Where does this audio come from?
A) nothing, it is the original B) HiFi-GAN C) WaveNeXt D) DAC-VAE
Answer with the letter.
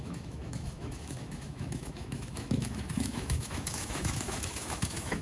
D